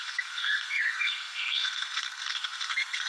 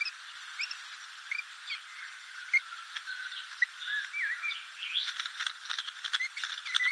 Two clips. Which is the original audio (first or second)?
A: second